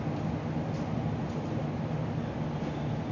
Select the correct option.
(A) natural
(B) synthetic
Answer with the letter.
A